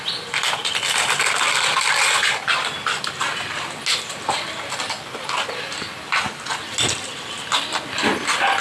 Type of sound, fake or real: real